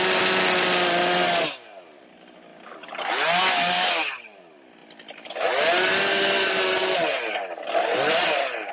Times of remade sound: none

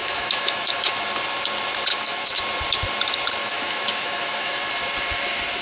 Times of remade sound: 0.0-0.9 (autoencoder, DAC-VAE); 1.9-2.4; 3.4-4.5

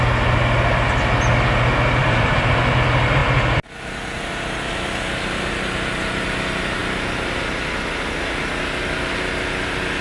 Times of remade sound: 2.0-2.6 (vocoder, BigVGAN v2)

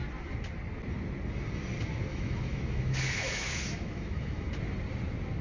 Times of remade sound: 2.1-4.5 (autoencoder, DAC-VAE)

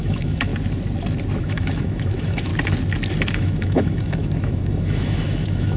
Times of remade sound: 0.0-0.5 (autoencoder, DAC-VAE); 1.4-2.5; 3.3-5.8

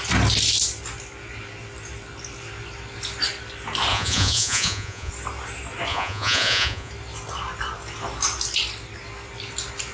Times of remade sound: 3.9-5.1 (vocoder, Vocos); 5.9-6.9

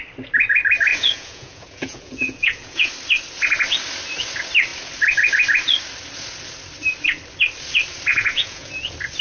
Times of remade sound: 0.9-2.9 (vocoder, Vocos); 8.1-8.7

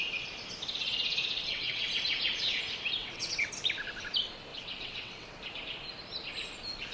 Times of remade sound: 1.4-1.9 (vocoder, WaveNeXt); 3.0-3.5; 4.5-5.3